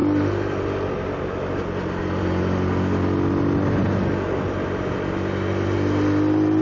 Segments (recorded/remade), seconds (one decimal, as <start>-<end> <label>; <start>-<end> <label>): 0.0-6.6 recorded